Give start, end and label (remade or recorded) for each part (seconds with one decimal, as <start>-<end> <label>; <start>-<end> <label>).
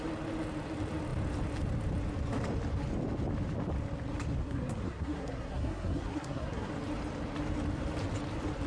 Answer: 0.0-4.4 recorded; 4.4-6.7 remade; 6.7-8.7 recorded